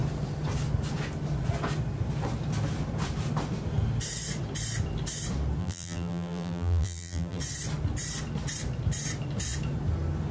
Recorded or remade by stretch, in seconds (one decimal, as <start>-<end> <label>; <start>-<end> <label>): 0.0-5.6 recorded; 5.6-7.4 remade; 7.4-10.3 recorded